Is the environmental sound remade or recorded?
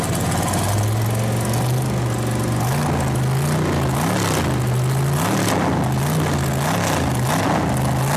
recorded